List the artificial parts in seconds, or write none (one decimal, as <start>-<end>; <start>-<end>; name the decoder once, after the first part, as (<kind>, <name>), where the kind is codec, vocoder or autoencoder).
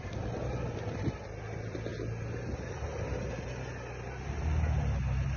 0.0-1.9 (vocoder, BigVGAN v2)